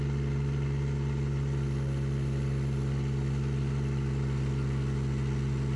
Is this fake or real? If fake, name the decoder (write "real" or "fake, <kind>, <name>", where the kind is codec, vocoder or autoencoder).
real